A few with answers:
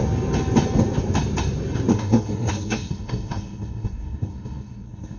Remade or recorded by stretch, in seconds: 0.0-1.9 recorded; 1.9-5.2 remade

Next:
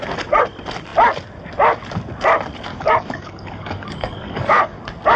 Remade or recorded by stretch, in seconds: 0.0-2.7 recorded; 2.7-4.8 remade; 4.8-5.2 recorded

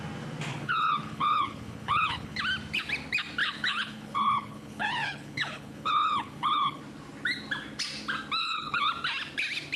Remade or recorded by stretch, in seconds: 0.0-0.5 recorded; 0.5-2.4 remade; 2.4-3.4 recorded; 3.4-6.8 remade; 6.8-8.4 recorded; 8.4-8.9 remade; 8.9-9.8 recorded

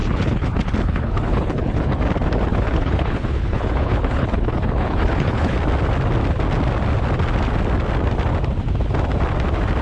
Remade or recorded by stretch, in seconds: 0.0-2.0 remade; 2.0-2.5 recorded; 2.5-5.6 remade; 5.6-9.8 recorded

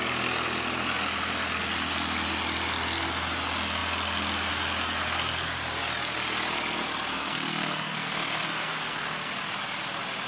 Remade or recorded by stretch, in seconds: 0.0-7.1 recorded; 7.1-9.3 remade; 9.3-10.3 recorded

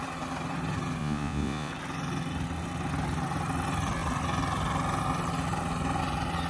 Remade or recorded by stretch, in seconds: 0.0-1.0 recorded; 1.0-1.7 remade; 1.7-6.5 recorded

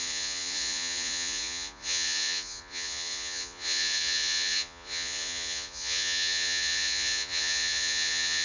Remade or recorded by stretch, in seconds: 0.0-8.4 remade